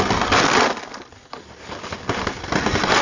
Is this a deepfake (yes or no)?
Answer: no